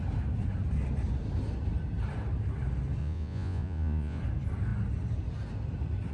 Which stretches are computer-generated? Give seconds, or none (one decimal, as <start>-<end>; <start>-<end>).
3.0-4.2